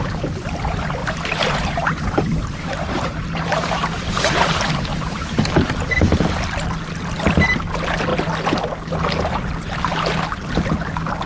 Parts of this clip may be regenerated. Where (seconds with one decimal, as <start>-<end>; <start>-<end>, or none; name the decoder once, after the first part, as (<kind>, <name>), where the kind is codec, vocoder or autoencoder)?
1.0-5.4 (vocoder, BigVGAN v2)